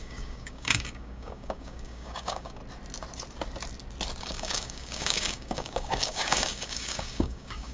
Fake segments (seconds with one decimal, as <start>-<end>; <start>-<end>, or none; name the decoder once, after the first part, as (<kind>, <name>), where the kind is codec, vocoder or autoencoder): 0.0-2.6 (codec, DAC); 4.2-7.7